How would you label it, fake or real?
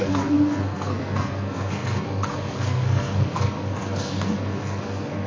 fake